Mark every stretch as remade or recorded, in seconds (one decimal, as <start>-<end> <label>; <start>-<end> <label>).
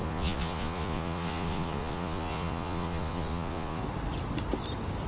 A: 0.0-3.8 remade; 3.8-5.1 recorded